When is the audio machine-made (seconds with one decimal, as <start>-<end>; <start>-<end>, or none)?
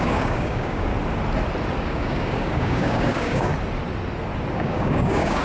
0.0-0.9; 1.8-3.5; 4.5-5.4